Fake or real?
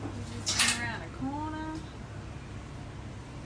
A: real